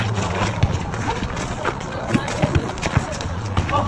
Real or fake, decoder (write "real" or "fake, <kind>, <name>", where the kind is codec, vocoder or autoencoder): fake, vocoder, Vocos